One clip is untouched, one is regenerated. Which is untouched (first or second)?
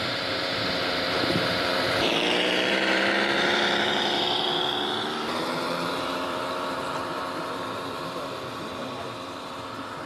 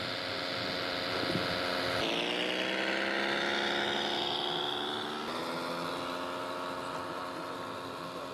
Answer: second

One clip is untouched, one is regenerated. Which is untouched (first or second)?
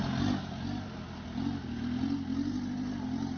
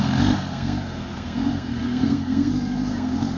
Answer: first